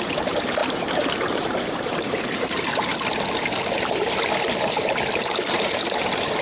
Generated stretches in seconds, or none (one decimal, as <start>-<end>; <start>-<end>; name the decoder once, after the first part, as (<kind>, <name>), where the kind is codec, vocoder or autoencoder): 0.0-2.9 (vocoder, BigVGAN v2); 5.2-6.4